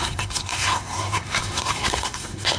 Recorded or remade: remade